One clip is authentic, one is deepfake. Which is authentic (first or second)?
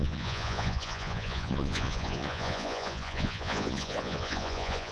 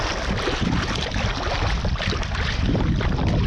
second